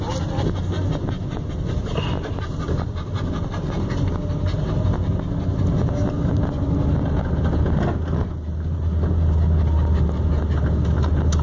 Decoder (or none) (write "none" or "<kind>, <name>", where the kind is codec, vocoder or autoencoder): none